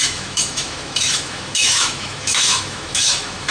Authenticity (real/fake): fake